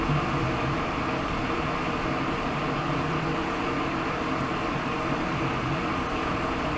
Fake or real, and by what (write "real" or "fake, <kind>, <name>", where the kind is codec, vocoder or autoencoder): fake, vocoder, BigVGAN v2